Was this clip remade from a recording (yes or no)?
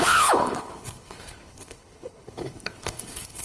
yes